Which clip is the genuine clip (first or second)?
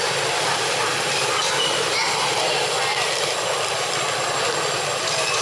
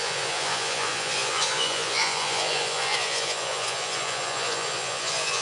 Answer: first